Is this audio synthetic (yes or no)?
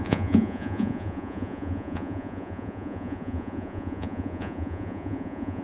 yes